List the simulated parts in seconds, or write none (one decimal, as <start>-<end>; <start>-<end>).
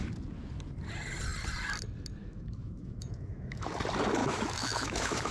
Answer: 2.2-3.7; 4.2-5.3